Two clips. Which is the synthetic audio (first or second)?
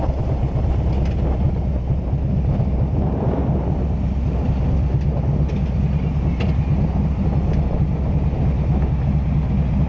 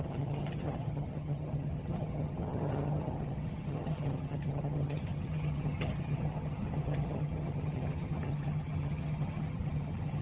second